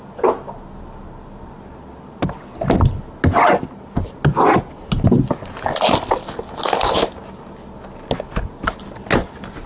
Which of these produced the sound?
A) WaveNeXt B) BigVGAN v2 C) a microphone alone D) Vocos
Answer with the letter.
C